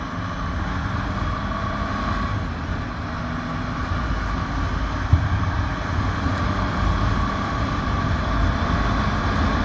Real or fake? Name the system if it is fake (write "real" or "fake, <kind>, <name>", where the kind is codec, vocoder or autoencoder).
real